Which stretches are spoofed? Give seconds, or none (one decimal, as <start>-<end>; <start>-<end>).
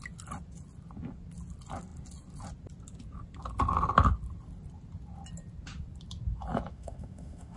6.7-7.6